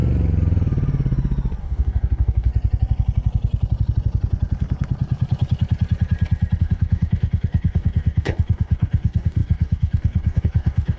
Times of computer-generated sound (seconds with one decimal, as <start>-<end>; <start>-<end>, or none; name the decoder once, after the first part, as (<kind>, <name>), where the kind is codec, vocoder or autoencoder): 1.6-2.5 (codec, DAC); 6.6-11.0